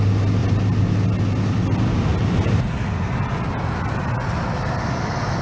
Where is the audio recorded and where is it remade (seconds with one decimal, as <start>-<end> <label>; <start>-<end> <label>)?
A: 0.0-5.4 recorded